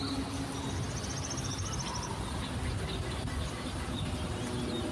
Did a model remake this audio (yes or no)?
no